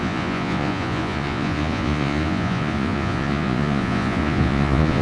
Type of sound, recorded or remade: remade